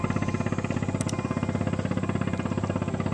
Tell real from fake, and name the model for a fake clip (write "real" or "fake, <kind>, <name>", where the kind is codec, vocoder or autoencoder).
real